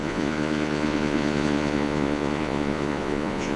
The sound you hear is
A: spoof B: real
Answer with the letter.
A